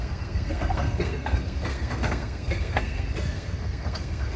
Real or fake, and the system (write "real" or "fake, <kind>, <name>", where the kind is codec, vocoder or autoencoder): fake, codec, SNAC